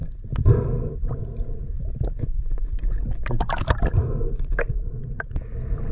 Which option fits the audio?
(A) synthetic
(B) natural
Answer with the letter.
B